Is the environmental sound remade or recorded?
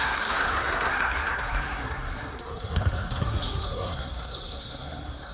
remade